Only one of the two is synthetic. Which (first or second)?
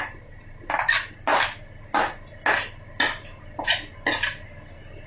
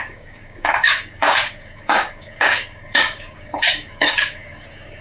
second